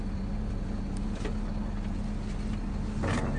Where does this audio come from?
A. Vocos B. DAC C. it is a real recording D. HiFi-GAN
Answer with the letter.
C